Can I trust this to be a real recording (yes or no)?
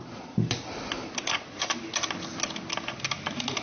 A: yes